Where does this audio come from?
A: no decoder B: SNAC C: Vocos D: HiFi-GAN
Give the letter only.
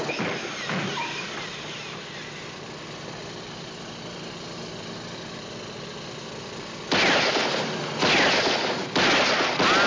A